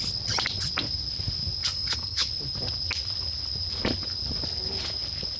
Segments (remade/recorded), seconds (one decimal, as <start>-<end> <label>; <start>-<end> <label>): 0.0-1.6 recorded; 1.6-2.3 remade; 2.3-5.4 recorded